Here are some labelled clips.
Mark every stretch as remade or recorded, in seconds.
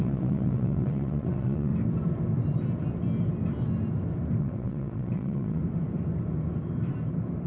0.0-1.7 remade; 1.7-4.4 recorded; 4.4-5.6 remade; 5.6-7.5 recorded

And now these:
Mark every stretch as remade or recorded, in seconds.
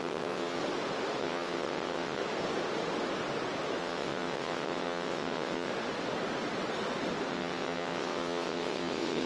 0.0-0.6 remade; 0.6-1.2 recorded; 1.2-2.2 remade; 2.2-3.8 recorded; 3.8-5.7 remade; 5.7-7.3 recorded; 7.3-9.3 remade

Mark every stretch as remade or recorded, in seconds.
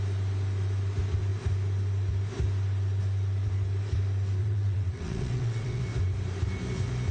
0.0-4.4 recorded; 4.4-5.8 remade; 5.8-7.1 recorded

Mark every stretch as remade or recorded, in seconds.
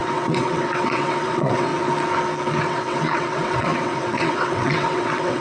0.0-1.7 remade; 1.7-2.6 recorded; 2.6-5.4 remade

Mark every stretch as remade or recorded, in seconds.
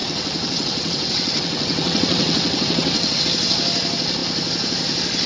0.0-3.2 remade; 3.2-5.3 recorded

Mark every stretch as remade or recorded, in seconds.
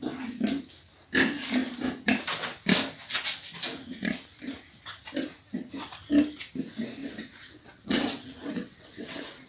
0.0-7.0 recorded; 7.0-9.5 remade